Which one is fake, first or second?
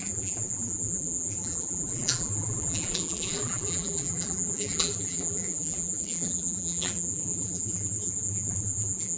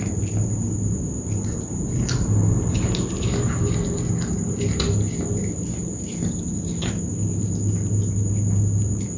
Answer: first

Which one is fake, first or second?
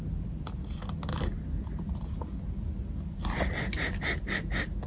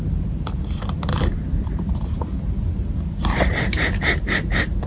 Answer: second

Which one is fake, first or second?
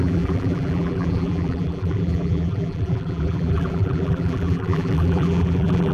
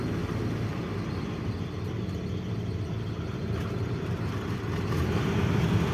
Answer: first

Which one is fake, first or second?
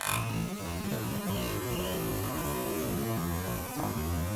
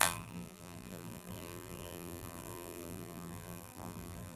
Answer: second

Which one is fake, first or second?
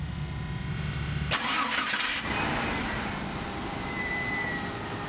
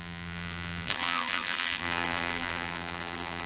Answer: second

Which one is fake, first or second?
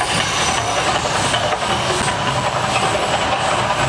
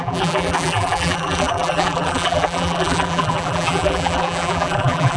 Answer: second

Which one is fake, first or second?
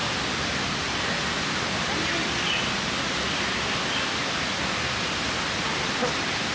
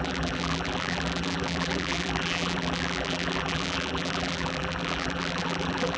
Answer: second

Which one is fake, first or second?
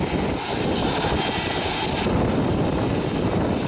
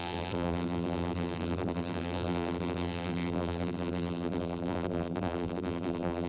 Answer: second